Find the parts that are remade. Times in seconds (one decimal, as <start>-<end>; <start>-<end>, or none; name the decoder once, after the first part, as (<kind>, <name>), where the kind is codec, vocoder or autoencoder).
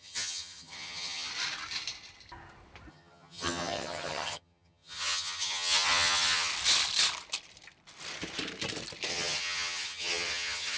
0.0-1.3 (vocoder, HiFi-GAN); 2.9-6.5; 9.1-10.8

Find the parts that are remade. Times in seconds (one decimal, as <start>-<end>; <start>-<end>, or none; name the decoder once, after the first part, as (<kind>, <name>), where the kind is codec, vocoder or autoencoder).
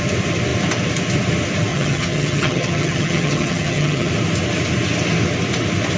1.7-4.1 (vocoder, HiFi-GAN)